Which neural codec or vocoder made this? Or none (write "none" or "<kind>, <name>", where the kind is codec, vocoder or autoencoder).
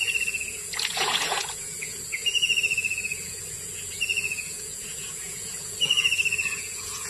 vocoder, Vocos